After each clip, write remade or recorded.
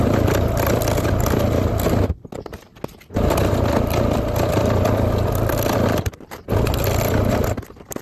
recorded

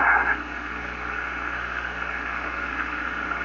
remade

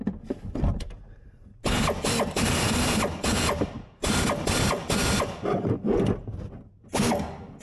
recorded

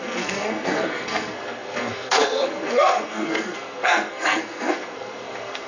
remade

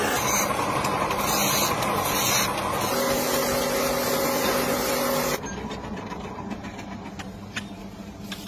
recorded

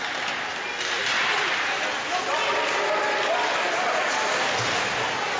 recorded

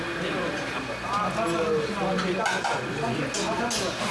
recorded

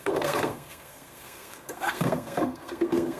remade